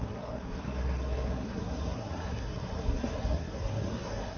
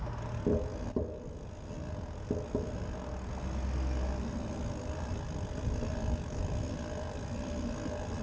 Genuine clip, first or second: second